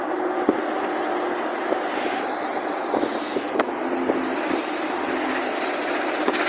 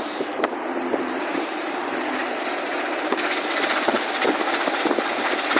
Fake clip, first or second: second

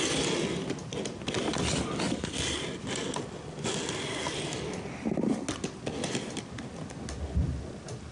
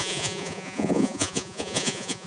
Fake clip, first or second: second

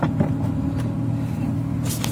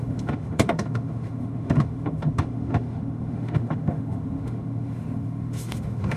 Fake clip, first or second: second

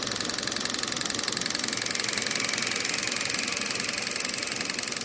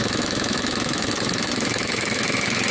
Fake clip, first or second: second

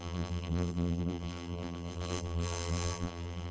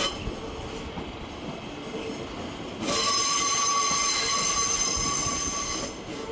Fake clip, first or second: first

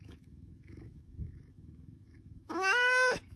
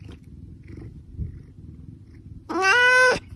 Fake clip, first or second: first